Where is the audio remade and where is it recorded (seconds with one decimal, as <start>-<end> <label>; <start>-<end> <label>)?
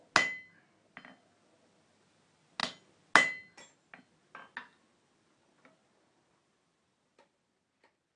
0.0-8.2 recorded